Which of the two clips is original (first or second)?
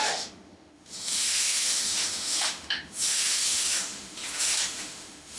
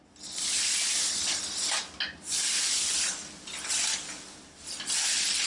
second